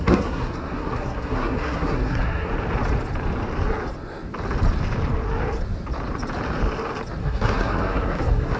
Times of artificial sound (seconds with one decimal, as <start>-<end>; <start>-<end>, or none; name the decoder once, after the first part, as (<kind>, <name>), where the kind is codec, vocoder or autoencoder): 0.0-2.5 (codec, SNAC); 7.2-8.6